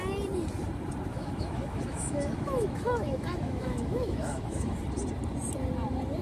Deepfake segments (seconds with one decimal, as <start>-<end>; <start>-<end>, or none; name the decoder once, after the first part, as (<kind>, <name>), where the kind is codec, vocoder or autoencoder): 1.1-4.8 (autoencoder, DAC-VAE)